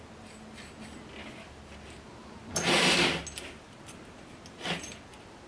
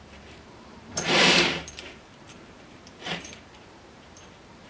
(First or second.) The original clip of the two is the first